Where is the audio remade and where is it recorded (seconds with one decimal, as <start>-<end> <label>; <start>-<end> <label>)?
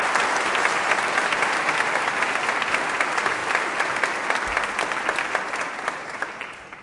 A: 0.0-3.4 recorded; 3.4-4.0 remade; 4.0-6.8 recorded